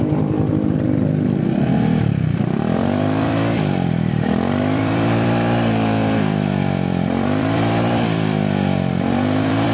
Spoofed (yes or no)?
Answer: yes